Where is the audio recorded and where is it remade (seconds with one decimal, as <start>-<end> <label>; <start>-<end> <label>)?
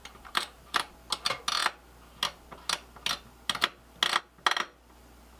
0.0-0.9 remade; 0.9-5.4 recorded